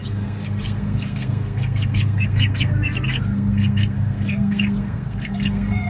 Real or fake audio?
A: fake